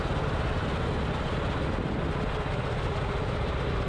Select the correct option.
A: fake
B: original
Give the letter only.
B